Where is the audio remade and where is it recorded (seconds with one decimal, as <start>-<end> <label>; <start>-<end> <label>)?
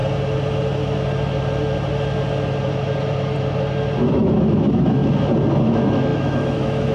0.0-4.1 recorded; 4.1-5.0 remade; 5.0-5.5 recorded; 5.5-6.9 remade